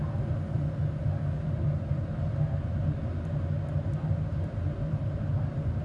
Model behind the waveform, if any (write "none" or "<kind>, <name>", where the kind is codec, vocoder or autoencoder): none